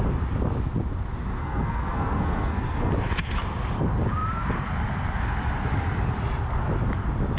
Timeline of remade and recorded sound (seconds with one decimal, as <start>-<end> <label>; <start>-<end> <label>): 0.0-1.4 recorded; 1.4-2.9 remade; 2.9-7.4 recorded